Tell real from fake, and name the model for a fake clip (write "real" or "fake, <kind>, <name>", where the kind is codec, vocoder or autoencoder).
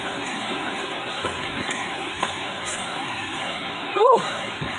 fake, codec, SNAC